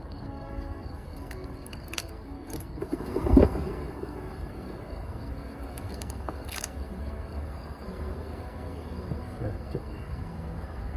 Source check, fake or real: fake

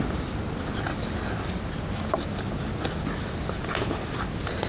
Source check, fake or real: real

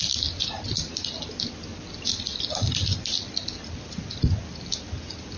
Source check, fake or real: real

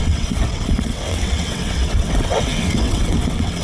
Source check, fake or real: fake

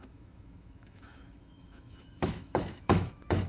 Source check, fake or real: fake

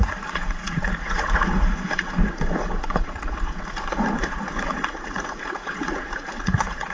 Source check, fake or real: fake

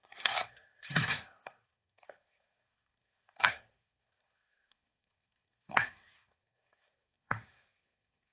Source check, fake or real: fake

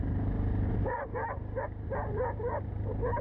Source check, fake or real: real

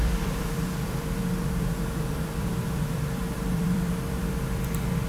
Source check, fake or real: fake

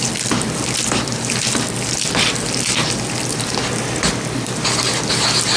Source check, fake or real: real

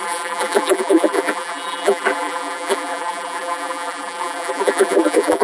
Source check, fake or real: fake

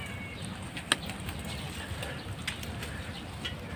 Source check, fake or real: real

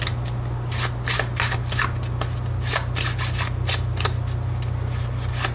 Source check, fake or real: real